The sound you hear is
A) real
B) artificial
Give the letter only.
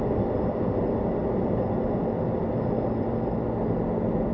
A